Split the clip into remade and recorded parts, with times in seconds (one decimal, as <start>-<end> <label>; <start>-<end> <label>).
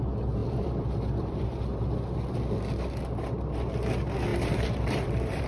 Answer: 0.0-0.4 recorded; 0.4-1.6 remade; 1.6-4.3 recorded; 4.3-5.5 remade